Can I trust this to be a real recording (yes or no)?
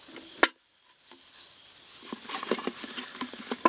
yes